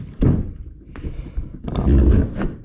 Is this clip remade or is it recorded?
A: recorded